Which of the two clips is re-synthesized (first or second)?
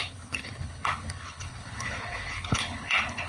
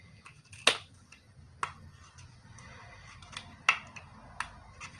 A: first